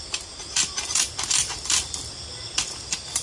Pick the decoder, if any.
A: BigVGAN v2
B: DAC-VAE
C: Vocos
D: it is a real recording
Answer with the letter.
D